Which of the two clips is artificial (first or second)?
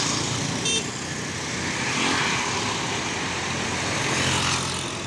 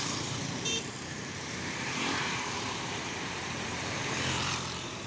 second